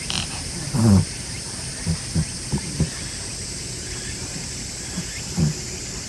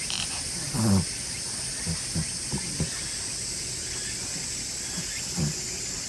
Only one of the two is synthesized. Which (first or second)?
first